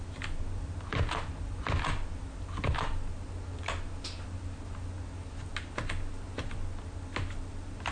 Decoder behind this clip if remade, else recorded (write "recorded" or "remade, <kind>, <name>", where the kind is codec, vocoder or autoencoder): recorded